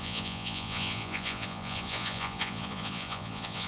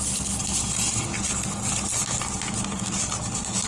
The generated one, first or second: first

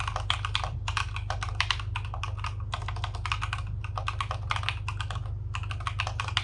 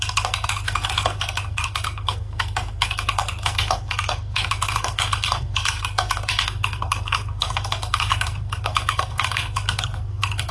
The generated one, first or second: second